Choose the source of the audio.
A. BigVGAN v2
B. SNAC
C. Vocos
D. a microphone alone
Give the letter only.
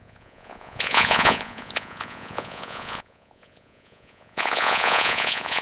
C